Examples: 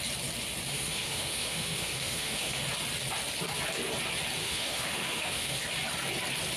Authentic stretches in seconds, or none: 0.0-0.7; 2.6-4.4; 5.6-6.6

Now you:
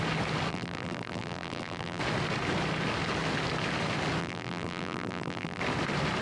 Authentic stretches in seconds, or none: 0.0-0.5; 2.0-4.2; 5.6-6.2

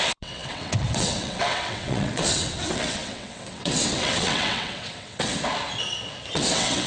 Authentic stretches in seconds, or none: 5.3-6.3

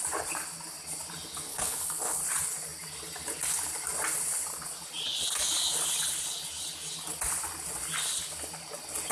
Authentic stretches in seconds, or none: 0.0-1.5; 2.2-9.1

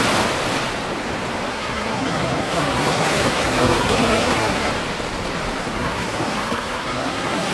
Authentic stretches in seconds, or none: 0.0-1.5; 4.7-5.6

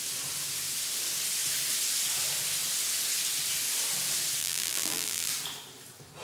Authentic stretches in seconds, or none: 0.0-4.4; 5.3-6.2